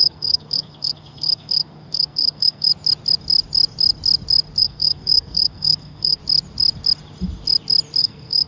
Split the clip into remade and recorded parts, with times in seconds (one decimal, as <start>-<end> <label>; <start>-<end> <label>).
0.0-2.7 remade; 2.7-4.6 recorded; 4.6-6.2 remade; 6.2-8.0 recorded; 8.0-8.5 remade